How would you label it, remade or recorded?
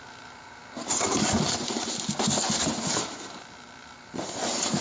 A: recorded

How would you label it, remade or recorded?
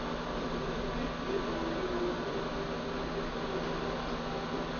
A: recorded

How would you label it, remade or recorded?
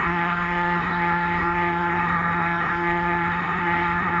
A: remade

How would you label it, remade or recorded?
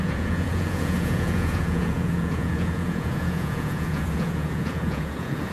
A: remade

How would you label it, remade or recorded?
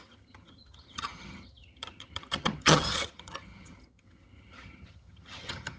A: remade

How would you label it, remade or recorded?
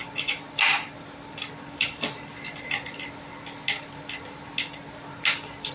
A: recorded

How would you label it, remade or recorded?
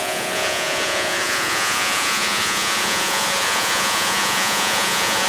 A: remade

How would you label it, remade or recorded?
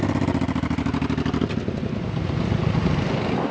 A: recorded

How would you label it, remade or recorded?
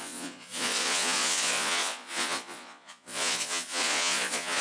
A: remade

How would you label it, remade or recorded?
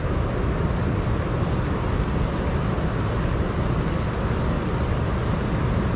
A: recorded